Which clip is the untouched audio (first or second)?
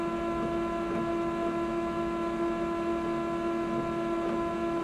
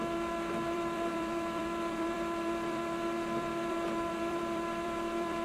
first